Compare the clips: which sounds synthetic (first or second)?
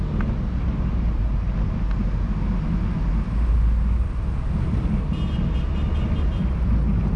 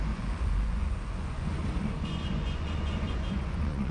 second